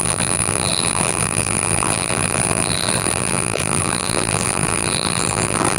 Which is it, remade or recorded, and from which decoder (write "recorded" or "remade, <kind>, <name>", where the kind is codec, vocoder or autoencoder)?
remade, vocoder, BigVGAN v2